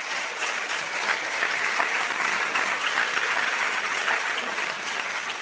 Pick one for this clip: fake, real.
fake